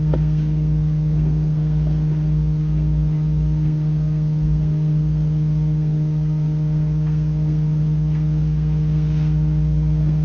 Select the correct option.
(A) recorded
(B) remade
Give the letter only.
B